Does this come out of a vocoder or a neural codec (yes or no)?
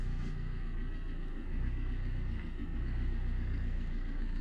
yes